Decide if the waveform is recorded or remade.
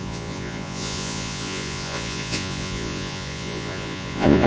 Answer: remade